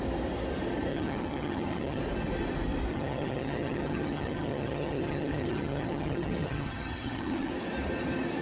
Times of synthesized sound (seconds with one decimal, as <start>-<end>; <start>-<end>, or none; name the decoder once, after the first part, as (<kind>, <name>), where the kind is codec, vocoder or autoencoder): 0.9-2.0 (vocoder, HiFi-GAN); 2.9-7.5